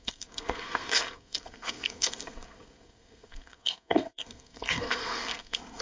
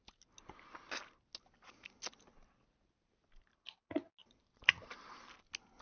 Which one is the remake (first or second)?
first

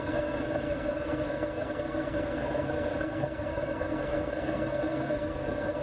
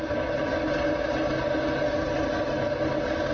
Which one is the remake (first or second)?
first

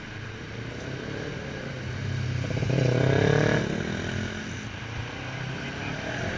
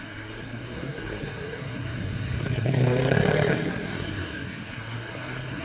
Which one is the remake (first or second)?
second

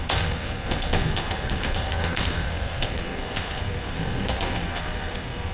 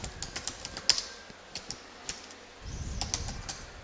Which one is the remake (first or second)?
first